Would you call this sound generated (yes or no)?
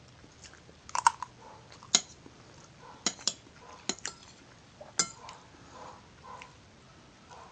no